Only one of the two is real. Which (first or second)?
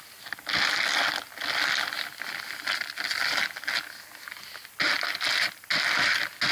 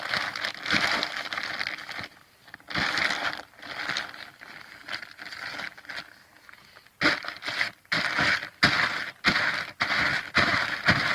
first